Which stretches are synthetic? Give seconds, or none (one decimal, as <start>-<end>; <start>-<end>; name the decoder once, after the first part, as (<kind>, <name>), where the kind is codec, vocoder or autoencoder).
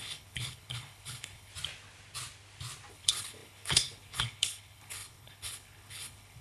0.0-1.5 (codec, HILCodec); 2.9-6.4